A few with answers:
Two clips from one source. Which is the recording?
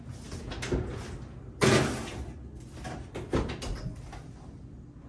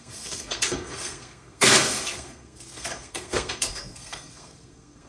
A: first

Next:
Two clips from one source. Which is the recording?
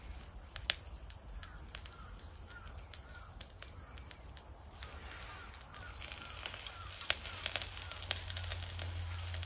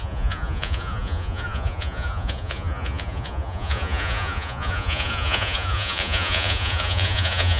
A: first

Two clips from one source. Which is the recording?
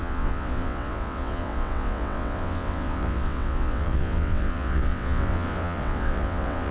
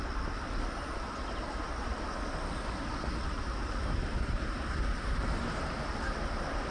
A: second